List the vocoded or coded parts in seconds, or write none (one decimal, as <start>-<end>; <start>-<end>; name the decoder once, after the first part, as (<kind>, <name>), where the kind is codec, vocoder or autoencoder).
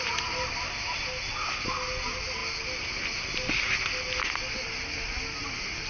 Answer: none